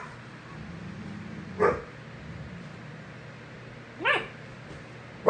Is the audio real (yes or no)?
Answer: yes